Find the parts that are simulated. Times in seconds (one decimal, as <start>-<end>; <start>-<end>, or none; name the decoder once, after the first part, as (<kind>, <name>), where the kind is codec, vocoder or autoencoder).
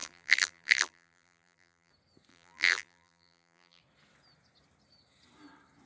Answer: 0.0-1.9 (vocoder, BigVGAN v2); 2.3-3.8